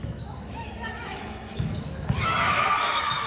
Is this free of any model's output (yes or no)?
no